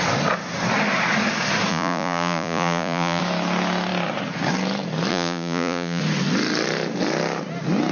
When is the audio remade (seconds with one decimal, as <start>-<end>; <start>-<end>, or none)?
1.7-3.2; 5.1-6.0